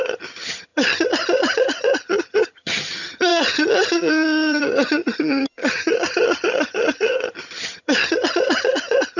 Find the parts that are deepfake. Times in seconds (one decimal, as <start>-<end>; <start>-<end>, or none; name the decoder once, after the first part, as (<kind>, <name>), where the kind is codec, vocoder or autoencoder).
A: 0.0-9.2 (vocoder, HiFi-GAN)